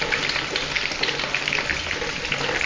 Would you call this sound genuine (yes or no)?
yes